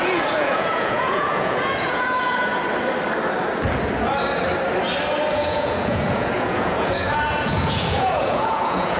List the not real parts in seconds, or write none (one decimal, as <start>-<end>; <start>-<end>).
0.0-2.5; 5.3-9.0